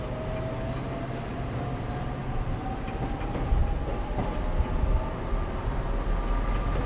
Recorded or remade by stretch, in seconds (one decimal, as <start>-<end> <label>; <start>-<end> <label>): 0.0-6.9 recorded